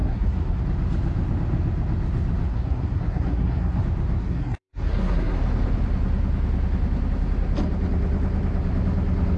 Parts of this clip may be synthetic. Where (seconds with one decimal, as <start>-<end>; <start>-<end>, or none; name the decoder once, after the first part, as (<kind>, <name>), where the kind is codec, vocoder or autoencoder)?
0.0-0.6 (codec, SNAC); 2.5-3.8; 4.2-5.4